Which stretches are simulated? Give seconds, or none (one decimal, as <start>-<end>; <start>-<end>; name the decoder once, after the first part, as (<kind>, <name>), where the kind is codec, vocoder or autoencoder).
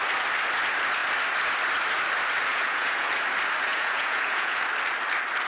2.5-3.1 (vocoder, Vocos); 3.7-4.6